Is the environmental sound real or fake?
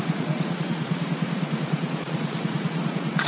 fake